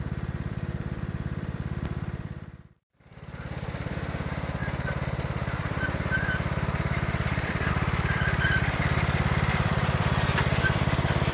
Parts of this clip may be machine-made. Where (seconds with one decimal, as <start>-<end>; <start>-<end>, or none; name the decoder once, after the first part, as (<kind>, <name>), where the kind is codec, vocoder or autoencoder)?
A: 0.0-11.3 (vocoder, BigVGAN v2)